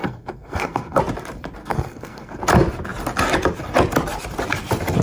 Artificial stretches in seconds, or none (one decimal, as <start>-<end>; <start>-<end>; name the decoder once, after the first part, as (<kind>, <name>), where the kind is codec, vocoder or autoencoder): 0.0-1.0 (codec, SNAC); 1.6-2.4